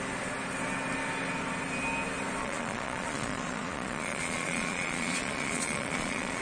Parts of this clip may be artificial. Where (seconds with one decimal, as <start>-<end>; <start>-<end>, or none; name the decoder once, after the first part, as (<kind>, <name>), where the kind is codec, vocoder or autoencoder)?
2.4-6.4 (vocoder, Vocos)